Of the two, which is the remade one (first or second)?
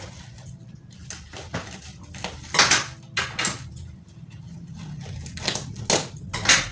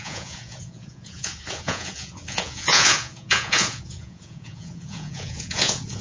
second